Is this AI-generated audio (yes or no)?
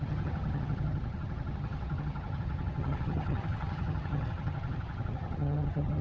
yes